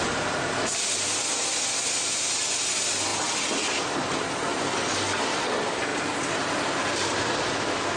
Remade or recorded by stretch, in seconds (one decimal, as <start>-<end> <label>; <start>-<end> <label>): 0.0-8.0 recorded

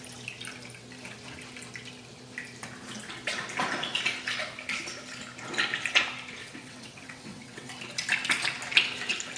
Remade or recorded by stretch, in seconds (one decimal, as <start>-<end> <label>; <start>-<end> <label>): 0.0-6.4 recorded; 6.4-7.7 remade; 7.7-9.4 recorded